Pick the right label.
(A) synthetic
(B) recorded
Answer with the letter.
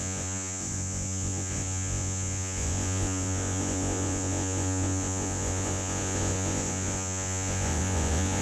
A